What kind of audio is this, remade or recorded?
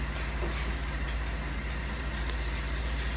recorded